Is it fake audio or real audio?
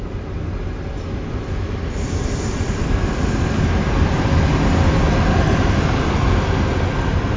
real